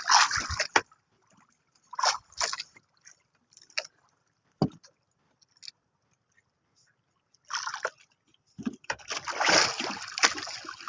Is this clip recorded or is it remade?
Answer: recorded